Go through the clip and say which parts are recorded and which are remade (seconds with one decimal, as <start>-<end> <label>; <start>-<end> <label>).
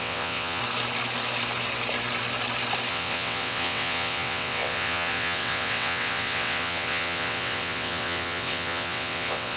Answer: 0.0-0.6 remade; 0.6-2.9 recorded; 2.9-9.6 remade